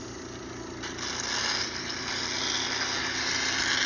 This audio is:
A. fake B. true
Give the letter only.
B